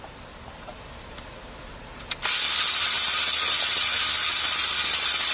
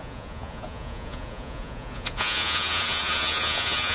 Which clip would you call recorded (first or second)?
first